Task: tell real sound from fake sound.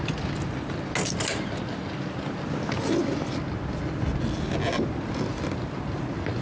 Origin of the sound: real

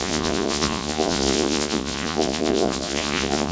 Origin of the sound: fake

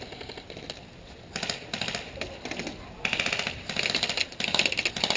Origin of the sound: real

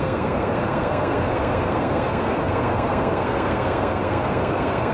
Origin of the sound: fake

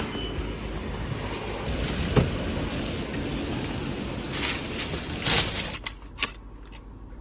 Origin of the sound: real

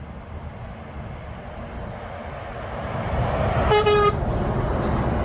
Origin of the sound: real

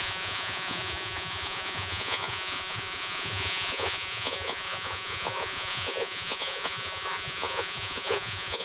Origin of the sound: fake